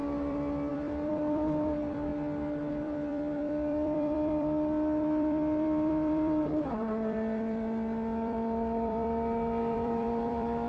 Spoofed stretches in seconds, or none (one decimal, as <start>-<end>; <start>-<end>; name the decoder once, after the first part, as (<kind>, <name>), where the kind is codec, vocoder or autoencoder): 0.0-2.1 (vocoder, BigVGAN v2); 2.7-10.7